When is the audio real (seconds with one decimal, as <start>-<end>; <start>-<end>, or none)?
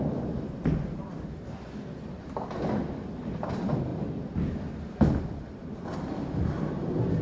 0.0-7.2